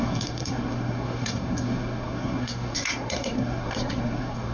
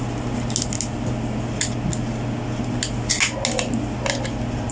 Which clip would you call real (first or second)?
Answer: second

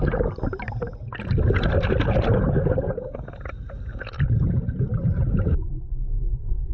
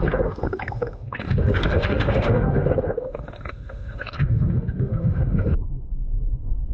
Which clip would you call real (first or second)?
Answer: first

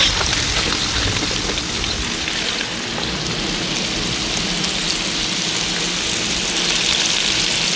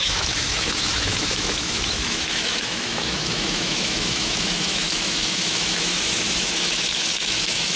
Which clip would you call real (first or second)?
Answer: first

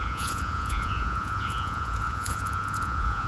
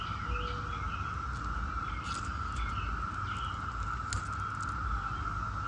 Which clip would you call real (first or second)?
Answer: second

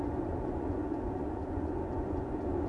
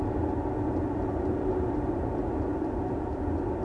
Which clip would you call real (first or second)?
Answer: second